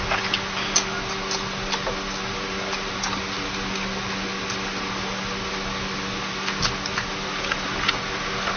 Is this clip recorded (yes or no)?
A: yes